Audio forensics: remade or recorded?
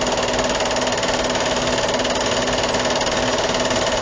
recorded